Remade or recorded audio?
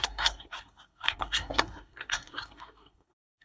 remade